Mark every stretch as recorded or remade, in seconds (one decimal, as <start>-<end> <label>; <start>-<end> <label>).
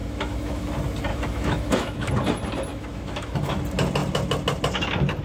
0.0-0.7 remade; 0.7-1.1 recorded; 1.1-2.1 remade; 2.1-2.7 recorded; 2.7-3.6 remade; 3.6-5.2 recorded